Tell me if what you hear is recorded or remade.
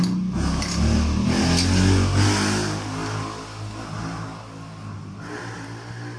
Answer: recorded